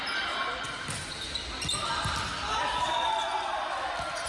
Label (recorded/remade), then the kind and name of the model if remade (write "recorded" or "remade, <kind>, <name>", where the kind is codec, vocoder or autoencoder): recorded